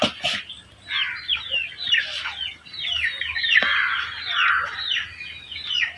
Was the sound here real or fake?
real